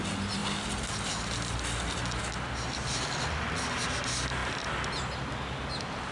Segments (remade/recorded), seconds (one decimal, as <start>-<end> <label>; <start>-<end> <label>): 0.0-6.1 recorded